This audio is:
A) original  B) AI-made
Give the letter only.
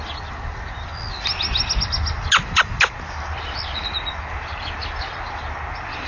A